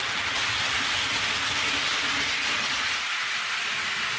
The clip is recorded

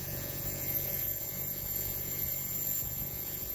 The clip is remade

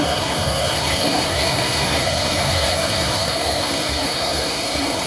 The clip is remade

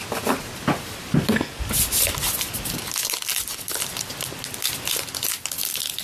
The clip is recorded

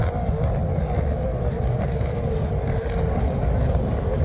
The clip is recorded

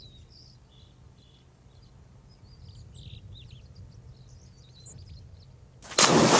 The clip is recorded